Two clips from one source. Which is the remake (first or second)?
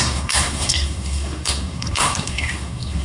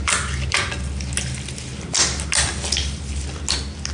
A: first